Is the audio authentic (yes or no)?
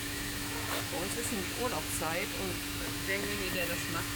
no